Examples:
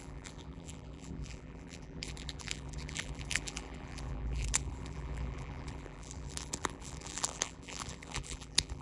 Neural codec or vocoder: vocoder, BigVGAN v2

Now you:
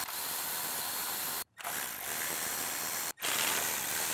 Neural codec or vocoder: vocoder, BigVGAN v2